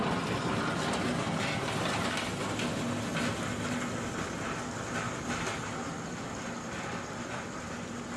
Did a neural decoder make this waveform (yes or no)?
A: no